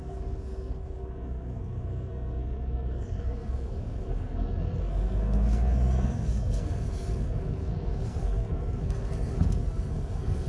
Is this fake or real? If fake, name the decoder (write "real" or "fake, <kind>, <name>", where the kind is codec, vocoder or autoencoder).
fake, codec, SNAC